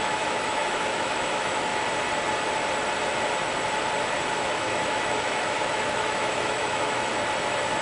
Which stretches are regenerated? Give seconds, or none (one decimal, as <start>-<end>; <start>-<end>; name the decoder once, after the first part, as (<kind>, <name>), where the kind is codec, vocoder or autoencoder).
0.0-1.7 (autoencoder, DAC-VAE); 4.4-7.1